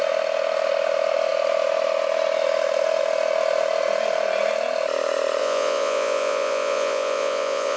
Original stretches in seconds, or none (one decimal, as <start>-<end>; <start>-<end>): 0.0-5.4